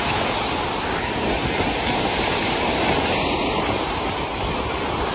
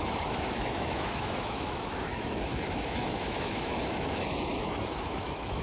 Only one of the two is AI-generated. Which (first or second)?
second